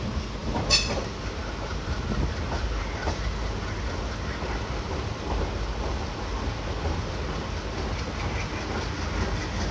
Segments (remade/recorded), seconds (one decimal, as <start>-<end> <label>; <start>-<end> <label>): 0.0-9.7 recorded